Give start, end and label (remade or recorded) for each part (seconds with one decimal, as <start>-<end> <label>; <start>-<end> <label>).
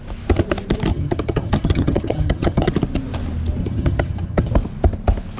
0.0-0.9 recorded; 0.9-2.7 remade; 2.7-3.6 recorded; 3.6-4.5 remade; 4.5-5.4 recorded